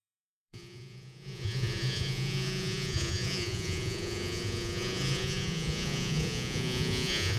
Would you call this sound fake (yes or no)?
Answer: yes